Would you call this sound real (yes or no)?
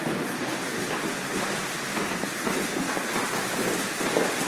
yes